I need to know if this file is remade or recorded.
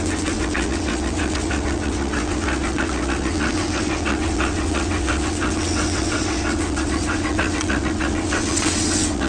remade